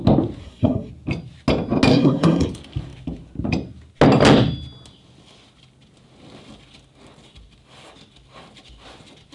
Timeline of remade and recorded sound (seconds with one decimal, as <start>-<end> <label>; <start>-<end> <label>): 0.0-0.4 recorded; 0.4-0.9 remade; 0.9-1.9 recorded; 1.9-2.5 remade; 2.5-9.3 recorded